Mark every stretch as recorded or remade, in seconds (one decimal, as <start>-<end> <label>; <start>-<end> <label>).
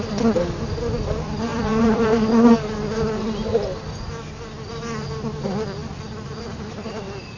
0.0-1.5 recorded; 1.5-2.3 remade; 2.3-7.4 recorded